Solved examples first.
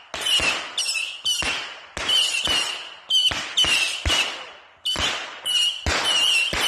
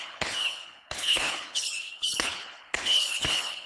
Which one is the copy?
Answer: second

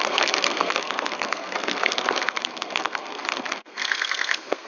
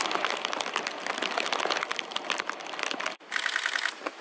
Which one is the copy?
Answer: first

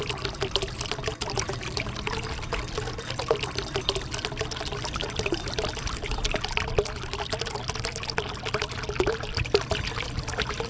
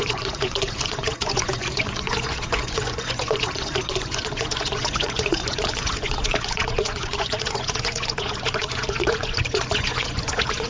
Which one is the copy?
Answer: second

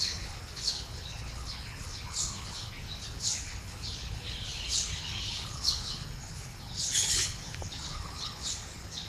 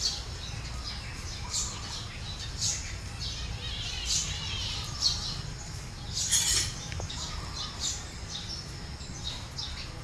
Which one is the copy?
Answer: first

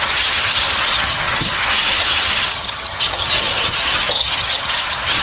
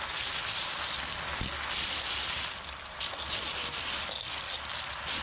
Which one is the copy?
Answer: first